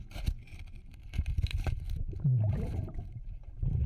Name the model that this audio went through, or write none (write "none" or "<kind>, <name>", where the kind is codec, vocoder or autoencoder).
vocoder, BigVGAN v2